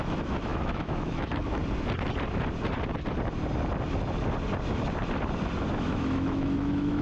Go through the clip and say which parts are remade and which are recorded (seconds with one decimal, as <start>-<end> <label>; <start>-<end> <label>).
0.0-1.6 remade; 1.6-5.8 recorded; 5.8-7.0 remade